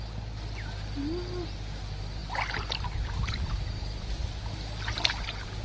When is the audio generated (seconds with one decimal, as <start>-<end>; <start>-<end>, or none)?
none